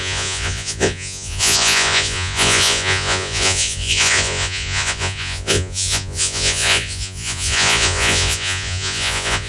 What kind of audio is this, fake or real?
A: fake